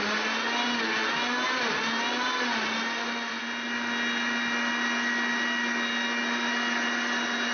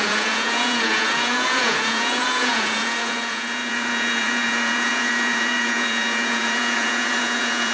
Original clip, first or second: first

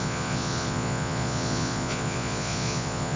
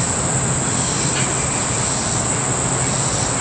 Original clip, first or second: second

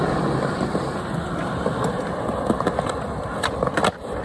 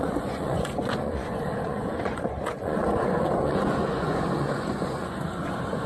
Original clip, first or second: first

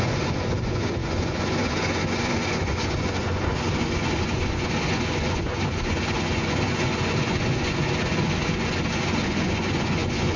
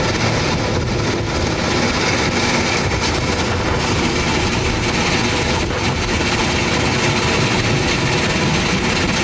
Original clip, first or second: second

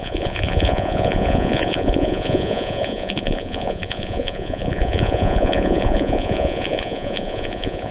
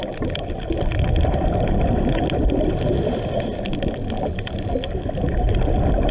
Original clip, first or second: second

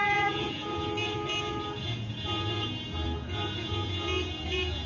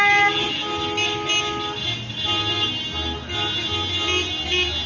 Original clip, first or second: second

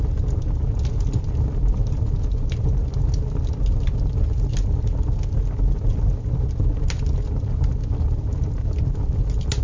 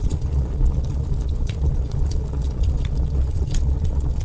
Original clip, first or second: first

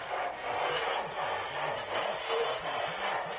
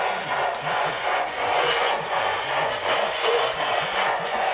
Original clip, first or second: first